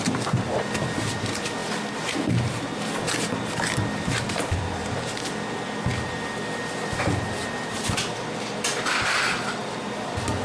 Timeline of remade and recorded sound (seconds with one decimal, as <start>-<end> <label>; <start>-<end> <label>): 0.0-10.4 remade

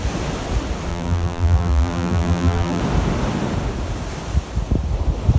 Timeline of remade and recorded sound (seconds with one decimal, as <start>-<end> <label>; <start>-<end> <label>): 0.0-0.9 recorded; 0.9-2.8 remade; 2.8-5.4 recorded

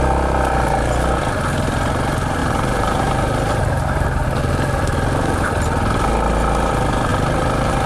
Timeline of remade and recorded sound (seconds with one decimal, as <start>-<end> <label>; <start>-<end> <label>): 0.0-2.4 recorded; 2.4-4.4 remade; 4.4-7.9 recorded

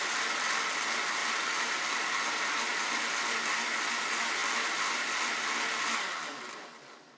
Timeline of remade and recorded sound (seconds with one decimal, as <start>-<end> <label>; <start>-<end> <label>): 0.0-1.2 recorded; 1.2-2.0 remade; 2.0-2.7 recorded; 2.7-3.2 remade; 3.2-4.4 recorded; 4.4-5.3 remade; 5.3-7.2 recorded

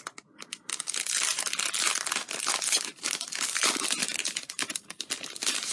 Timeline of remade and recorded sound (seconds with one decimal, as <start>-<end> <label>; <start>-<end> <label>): 0.0-2.2 recorded; 2.2-5.7 remade

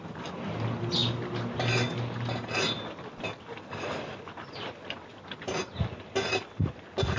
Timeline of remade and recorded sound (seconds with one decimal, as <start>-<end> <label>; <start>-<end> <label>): 0.0-1.0 recorded; 1.0-5.3 remade; 5.3-7.2 recorded